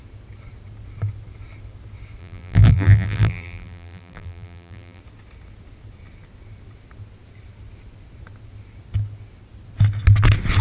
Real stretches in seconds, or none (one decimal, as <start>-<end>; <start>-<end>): 0.0-2.2; 5.0-10.6